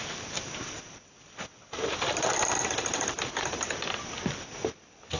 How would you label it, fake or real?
real